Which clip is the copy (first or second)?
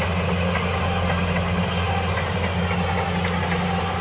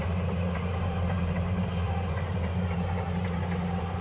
second